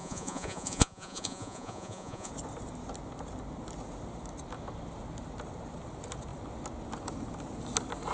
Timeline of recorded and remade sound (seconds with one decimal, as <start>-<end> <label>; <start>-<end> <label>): 0.0-2.3 remade; 2.3-8.1 recorded